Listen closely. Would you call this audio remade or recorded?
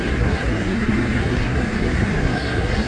remade